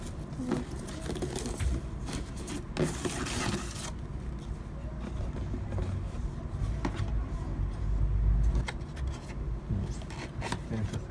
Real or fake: real